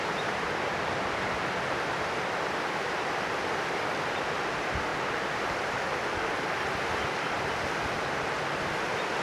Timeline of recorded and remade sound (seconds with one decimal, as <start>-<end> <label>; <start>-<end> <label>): 0.0-4.9 remade; 4.9-7.1 recorded; 7.1-9.2 remade